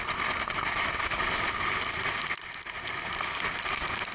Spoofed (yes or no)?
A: no